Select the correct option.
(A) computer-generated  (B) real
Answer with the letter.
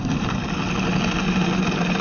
B